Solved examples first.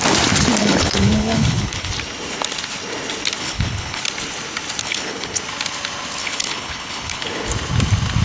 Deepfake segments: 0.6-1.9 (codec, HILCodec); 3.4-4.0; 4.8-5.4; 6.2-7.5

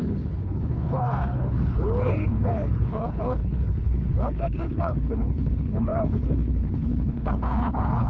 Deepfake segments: 0.0-8.1 (codec, HILCodec)

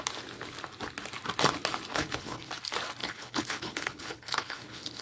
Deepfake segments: 1.9-2.5 (codec, HILCodec); 3.0-5.0

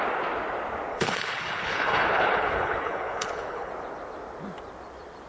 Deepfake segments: 0.9-3.7 (codec, HILCodec)

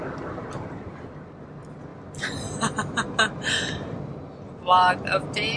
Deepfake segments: none